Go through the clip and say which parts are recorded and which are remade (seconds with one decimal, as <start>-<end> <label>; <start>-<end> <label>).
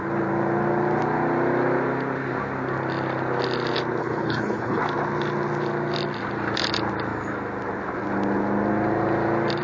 0.0-4.0 recorded; 4.0-4.8 remade; 4.8-9.6 recorded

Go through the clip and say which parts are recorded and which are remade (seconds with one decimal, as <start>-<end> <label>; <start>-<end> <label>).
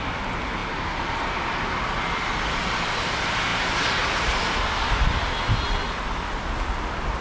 0.0-7.2 recorded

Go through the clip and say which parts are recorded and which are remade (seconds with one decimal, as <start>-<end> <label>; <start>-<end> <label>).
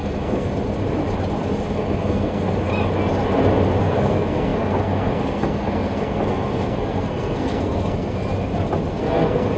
0.0-0.5 remade; 0.5-1.7 recorded; 1.7-2.7 remade; 2.7-3.8 recorded; 3.8-8.3 remade; 8.3-8.9 recorded; 8.9-9.6 remade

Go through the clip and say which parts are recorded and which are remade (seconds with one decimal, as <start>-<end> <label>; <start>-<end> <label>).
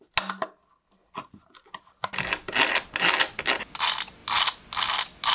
0.0-5.3 recorded